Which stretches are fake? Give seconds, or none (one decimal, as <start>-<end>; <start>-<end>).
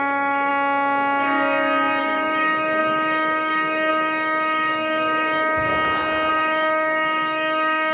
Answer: 0.0-0.5; 2.0-5.7; 6.3-7.9